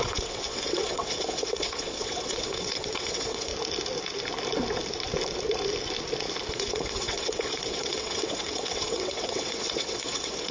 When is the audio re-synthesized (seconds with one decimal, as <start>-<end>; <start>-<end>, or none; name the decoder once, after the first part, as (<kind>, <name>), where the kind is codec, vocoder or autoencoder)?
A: 0.0-3.5 (vocoder, WaveNeXt); 6.5-10.5